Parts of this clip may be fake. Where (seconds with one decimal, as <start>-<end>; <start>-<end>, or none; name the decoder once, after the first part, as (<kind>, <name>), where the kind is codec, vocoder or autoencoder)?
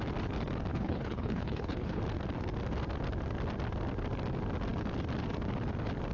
0.7-2.0 (codec, HILCodec)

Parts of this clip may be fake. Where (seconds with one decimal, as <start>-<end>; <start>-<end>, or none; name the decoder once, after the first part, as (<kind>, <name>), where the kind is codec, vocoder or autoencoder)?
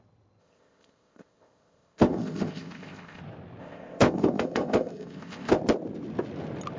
0.4-3.2 (codec, ZipCodec); 3.6-5.6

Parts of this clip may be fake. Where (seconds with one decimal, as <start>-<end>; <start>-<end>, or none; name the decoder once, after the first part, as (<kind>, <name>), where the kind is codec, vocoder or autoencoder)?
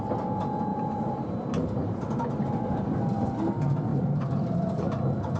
0.7-1.3 (vocoder, BigVGAN v2); 1.8-3.0; 3.9-4.7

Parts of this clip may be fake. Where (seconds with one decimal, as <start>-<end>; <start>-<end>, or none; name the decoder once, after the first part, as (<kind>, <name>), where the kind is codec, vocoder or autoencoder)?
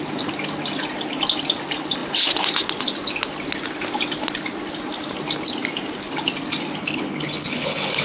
6.8-8.0 (codec, HILCodec)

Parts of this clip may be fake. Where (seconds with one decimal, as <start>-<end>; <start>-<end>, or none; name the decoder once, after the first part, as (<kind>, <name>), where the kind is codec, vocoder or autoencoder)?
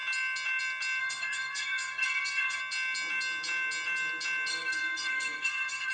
1.0-2.6 (codec, SNAC); 4.5-5.9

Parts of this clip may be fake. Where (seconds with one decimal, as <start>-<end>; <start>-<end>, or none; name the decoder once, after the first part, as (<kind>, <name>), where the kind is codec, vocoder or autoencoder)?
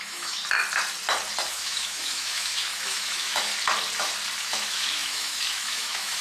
0.0-0.4 (autoencoder, DAC-VAE); 1.5-3.5; 4.4-6.2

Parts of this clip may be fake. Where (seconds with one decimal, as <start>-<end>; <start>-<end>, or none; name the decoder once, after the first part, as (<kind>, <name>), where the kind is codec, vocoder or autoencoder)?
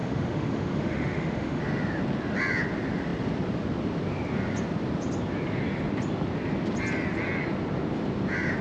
0.0-1.6 (autoencoder, DAC-VAE)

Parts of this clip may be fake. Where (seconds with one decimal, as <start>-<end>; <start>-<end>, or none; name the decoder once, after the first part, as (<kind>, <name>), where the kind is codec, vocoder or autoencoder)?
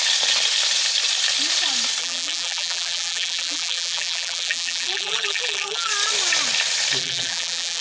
2.0-5.9 (vocoder, BigVGAN v2); 7.0-7.8